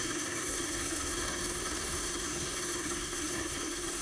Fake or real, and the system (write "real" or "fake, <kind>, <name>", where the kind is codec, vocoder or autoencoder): fake, codec, SNAC